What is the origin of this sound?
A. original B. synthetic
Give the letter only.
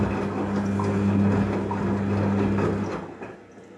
A